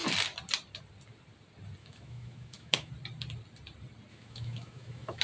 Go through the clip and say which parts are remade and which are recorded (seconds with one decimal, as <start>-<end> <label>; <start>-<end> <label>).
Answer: 0.0-1.8 recorded; 1.8-2.9 remade; 2.9-4.1 recorded; 4.1-5.2 remade